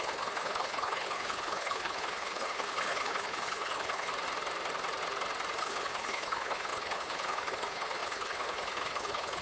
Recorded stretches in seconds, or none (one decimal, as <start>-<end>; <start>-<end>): 4.1-5.6